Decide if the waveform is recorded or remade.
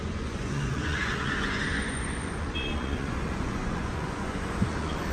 remade